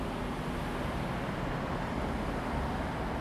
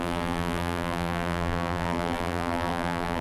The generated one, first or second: second